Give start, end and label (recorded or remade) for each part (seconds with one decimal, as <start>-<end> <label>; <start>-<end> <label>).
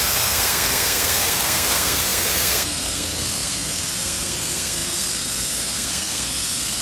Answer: 0.0-6.8 remade